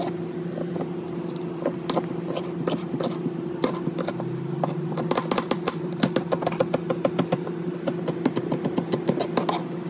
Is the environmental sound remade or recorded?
recorded